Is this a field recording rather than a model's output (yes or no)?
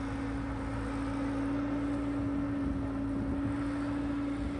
yes